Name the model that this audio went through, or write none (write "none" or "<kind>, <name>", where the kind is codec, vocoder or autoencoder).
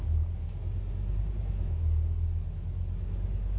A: none